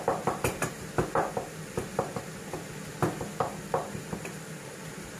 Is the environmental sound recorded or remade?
remade